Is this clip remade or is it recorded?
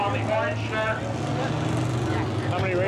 recorded